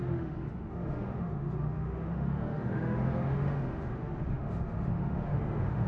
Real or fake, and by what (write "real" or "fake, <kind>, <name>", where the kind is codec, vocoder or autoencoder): fake, autoencoder, DAC-VAE